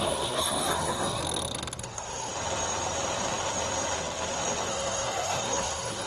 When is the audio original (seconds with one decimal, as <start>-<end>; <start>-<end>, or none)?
1.2-1.8; 2.3-4.7